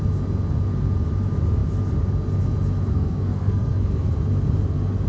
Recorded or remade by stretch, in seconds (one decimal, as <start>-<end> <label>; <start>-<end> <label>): 0.0-2.9 recorded; 2.9-4.1 remade; 4.1-5.1 recorded